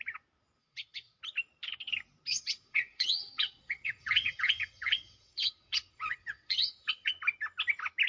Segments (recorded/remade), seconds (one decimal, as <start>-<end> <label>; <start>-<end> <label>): 0.0-0.6 recorded; 0.6-1.2 remade; 1.2-2.3 recorded; 2.3-7.1 remade; 7.1-8.1 recorded